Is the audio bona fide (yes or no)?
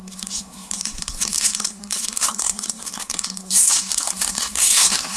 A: no